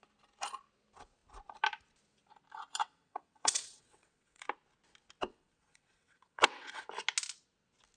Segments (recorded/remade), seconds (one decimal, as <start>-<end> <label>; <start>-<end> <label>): 0.0-2.8 recorded; 2.8-4.4 remade; 4.4-5.3 recorded; 5.3-6.9 remade; 6.9-8.0 recorded